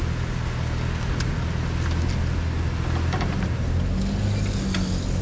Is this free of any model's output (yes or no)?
yes